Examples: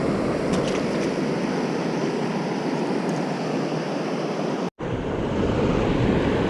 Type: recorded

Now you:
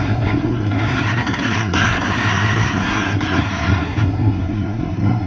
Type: remade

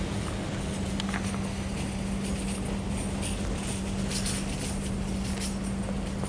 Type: recorded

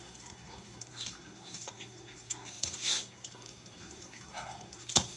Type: remade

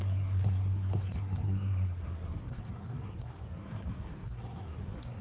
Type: remade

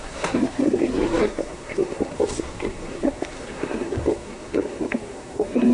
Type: remade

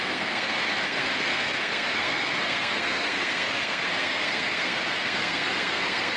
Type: remade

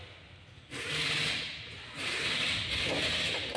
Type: recorded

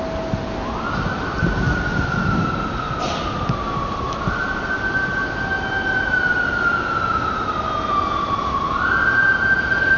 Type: recorded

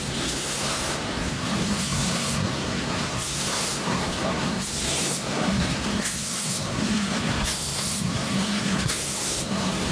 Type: remade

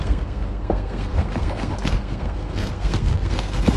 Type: remade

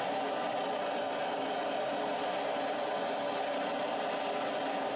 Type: recorded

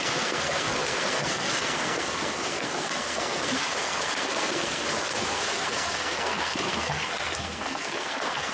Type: remade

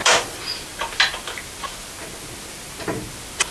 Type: recorded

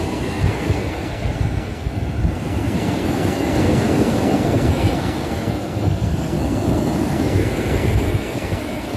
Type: remade